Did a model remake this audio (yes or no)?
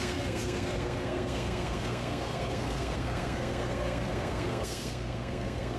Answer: yes